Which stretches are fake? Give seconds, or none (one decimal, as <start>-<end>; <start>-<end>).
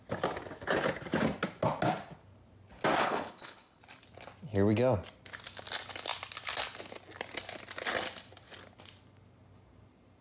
3.0-3.8